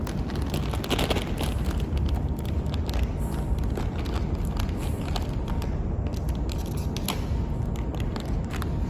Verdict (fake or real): real